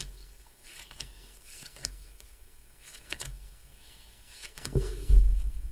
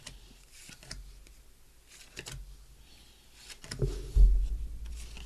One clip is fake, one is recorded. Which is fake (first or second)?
first